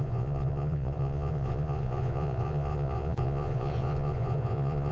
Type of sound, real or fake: fake